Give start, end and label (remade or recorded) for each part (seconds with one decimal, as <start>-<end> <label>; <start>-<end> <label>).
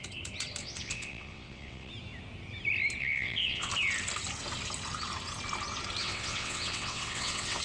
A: 0.0-0.6 recorded; 0.6-1.9 remade; 1.9-3.0 recorded; 3.0-3.7 remade; 3.7-6.0 recorded; 6.0-7.6 remade